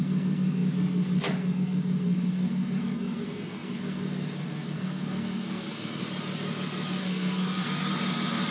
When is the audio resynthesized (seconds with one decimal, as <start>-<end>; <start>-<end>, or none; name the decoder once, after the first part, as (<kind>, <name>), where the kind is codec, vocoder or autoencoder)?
0.0-6.0 (codec, SNAC); 7.0-7.9